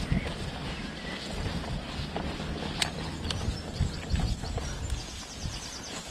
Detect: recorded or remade recorded